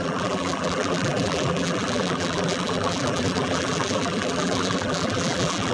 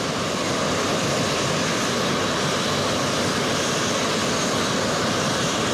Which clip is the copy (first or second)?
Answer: first